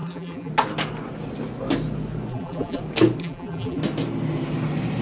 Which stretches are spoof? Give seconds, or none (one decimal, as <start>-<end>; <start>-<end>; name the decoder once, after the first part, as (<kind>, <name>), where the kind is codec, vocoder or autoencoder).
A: 0.0-0.5 (vocoder, BigVGAN v2); 2.3-2.8; 3.2-3.8